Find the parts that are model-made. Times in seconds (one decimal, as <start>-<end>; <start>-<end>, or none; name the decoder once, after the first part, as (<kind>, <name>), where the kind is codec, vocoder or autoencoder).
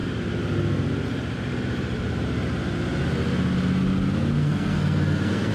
4.4-5.5 (codec, SNAC)